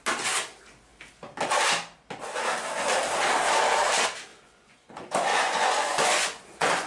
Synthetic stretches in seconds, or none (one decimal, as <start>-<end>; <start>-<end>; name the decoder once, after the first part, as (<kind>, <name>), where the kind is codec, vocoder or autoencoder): 4.3-6.9 (vocoder, Vocos)